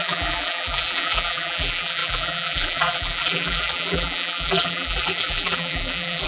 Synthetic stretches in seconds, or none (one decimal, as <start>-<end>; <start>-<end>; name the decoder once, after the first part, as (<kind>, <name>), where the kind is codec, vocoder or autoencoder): 0.0-6.3 (vocoder, BigVGAN v2)